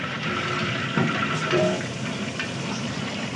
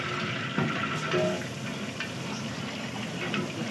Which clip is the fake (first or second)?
first